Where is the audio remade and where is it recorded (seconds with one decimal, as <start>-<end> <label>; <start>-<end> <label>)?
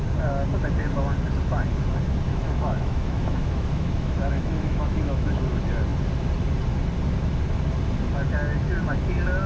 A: 0.0-2.3 recorded; 2.3-5.4 remade; 5.4-9.5 recorded